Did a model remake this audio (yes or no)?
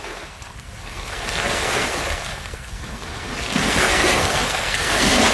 yes